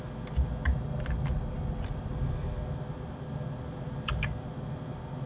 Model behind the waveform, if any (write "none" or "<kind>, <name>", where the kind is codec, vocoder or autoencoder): none